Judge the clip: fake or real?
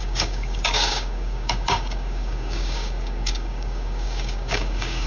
fake